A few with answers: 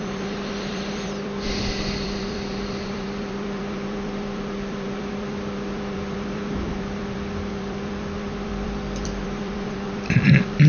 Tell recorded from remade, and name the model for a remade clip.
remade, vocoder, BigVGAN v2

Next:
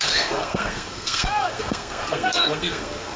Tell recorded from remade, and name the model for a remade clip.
remade, codec, SNAC